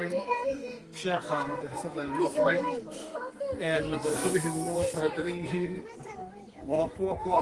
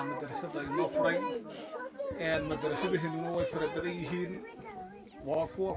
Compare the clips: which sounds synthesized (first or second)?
first